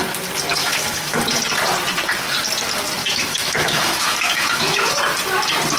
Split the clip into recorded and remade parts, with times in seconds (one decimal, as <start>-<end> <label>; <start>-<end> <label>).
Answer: 0.0-0.6 recorded; 0.6-1.2 remade; 1.2-3.0 recorded; 3.0-5.0 remade; 5.0-5.8 recorded